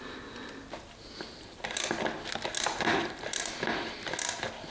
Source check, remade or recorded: recorded